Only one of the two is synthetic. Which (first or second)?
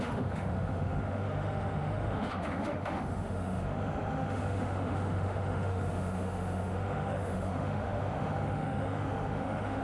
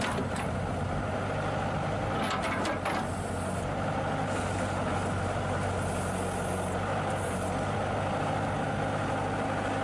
first